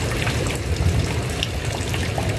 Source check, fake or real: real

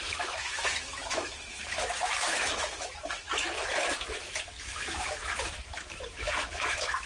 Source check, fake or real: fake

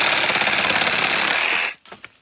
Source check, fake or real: real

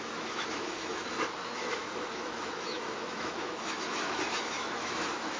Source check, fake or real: fake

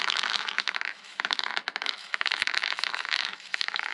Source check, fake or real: fake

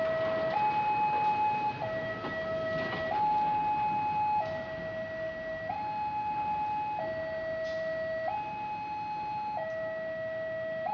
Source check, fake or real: real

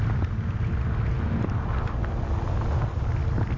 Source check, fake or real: real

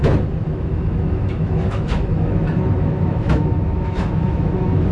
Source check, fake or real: fake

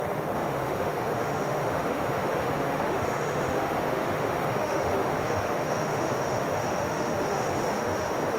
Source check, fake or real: fake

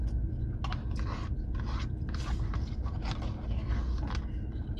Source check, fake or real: real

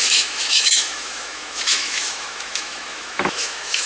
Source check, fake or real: fake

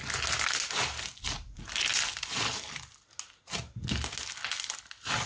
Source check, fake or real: real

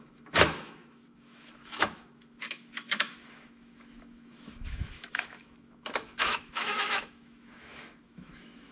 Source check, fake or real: fake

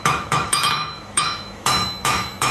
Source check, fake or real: fake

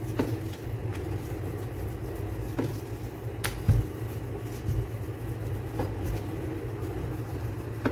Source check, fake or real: real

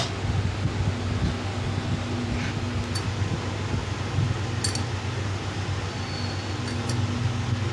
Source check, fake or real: real